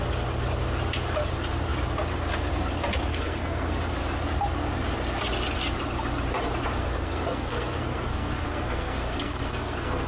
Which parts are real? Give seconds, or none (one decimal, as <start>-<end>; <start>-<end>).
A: 0.0-3.1; 3.8-6.8